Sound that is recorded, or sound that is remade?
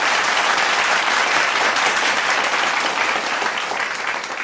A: remade